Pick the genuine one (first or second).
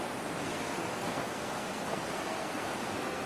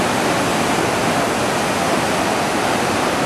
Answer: second